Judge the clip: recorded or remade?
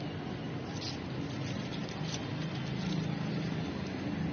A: recorded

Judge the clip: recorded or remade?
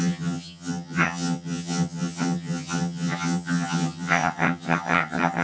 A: remade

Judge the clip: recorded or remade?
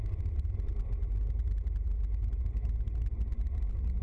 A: recorded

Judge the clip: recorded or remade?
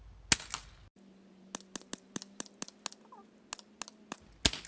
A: recorded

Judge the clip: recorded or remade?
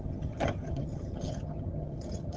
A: remade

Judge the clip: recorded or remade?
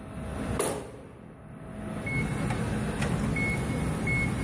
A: recorded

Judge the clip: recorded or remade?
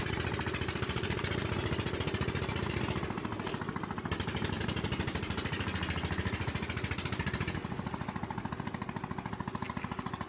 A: recorded